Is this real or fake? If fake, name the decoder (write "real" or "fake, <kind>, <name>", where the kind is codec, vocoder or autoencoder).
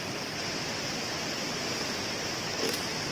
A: real